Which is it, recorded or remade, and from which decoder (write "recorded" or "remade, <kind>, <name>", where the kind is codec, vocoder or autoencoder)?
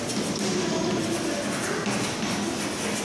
recorded